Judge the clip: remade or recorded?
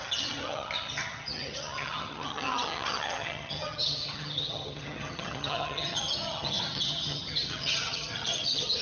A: remade